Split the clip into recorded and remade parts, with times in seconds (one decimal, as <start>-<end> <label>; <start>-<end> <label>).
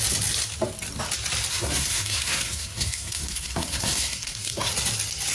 0.0-1.5 recorded; 1.5-4.7 remade; 4.7-5.3 recorded